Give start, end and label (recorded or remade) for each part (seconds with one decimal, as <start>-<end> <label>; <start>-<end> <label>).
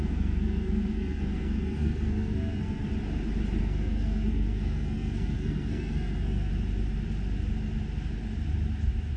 0.0-2.9 remade; 2.9-3.6 recorded; 3.6-6.5 remade; 6.5-9.2 recorded